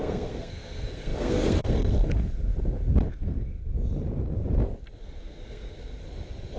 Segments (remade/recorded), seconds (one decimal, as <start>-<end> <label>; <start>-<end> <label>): 0.0-2.5 remade; 2.5-3.1 recorded; 3.1-3.6 remade; 3.6-5.0 recorded; 5.0-6.0 remade; 6.0-6.6 recorded

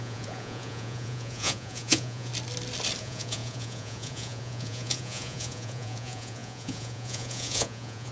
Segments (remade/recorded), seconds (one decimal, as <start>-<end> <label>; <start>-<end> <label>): 0.0-2.3 remade; 2.3-3.0 recorded; 3.0-8.1 remade

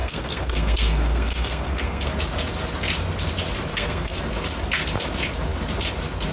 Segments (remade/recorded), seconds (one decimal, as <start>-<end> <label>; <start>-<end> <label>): 0.0-2.1 remade; 2.1-3.7 recorded; 3.7-4.2 remade; 4.2-6.3 recorded

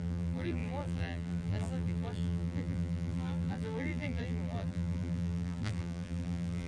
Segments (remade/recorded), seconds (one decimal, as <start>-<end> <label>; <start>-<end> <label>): 0.0-6.7 remade

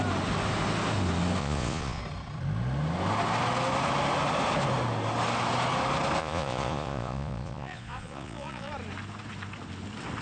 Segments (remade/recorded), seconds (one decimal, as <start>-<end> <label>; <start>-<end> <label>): 0.0-1.4 recorded; 1.4-2.0 remade; 2.0-6.2 recorded; 6.2-8.7 remade; 8.7-10.2 recorded

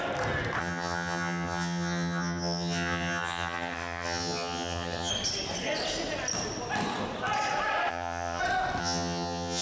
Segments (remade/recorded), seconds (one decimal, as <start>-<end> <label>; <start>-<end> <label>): 0.0-0.6 recorded; 0.6-5.1 remade; 5.1-7.9 recorded; 7.9-8.4 remade; 8.4-8.8 recorded; 8.8-9.6 remade